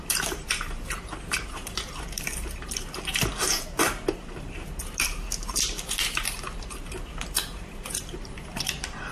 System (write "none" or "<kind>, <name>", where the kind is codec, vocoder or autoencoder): vocoder, BigVGAN v2